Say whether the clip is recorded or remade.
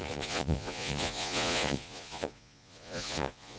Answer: remade